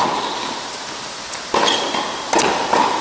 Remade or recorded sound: recorded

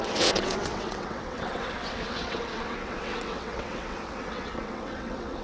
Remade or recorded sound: remade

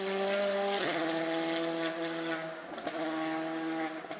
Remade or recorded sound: recorded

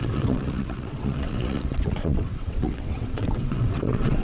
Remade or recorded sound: remade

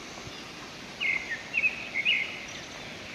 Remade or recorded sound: recorded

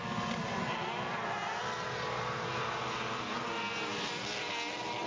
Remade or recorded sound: recorded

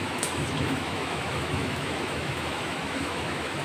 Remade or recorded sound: remade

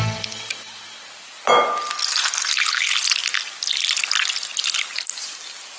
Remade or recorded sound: recorded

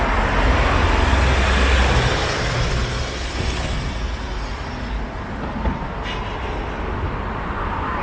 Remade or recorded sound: recorded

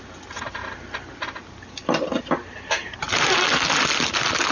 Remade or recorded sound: recorded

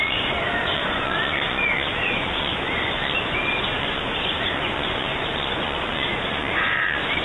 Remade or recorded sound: remade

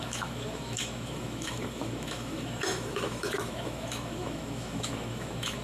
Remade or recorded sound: remade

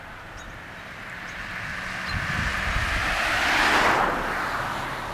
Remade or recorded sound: recorded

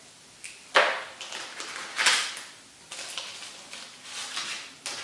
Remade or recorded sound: recorded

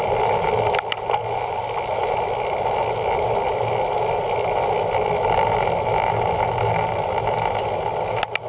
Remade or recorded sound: recorded